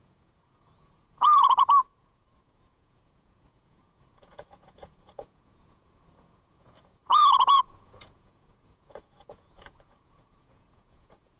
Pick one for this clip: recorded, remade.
remade